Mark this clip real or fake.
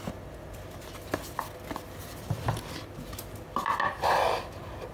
real